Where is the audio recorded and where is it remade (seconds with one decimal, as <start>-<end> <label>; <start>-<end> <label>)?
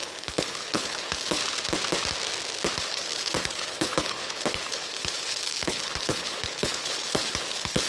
0.0-1.4 remade; 1.4-2.8 recorded; 2.8-7.9 remade